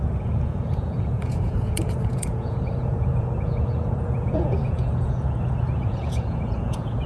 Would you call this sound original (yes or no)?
no